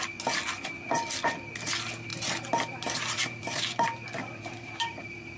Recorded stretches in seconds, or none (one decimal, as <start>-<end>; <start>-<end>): 0.0-2.1